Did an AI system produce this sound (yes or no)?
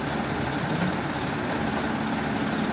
no